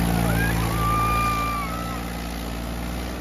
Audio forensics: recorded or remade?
recorded